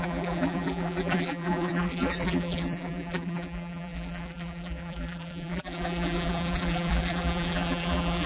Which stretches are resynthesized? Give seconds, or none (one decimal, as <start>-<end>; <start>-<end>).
0.0-8.3

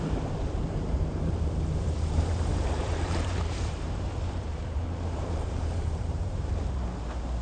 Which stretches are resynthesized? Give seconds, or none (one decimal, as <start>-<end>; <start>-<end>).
0.0-7.4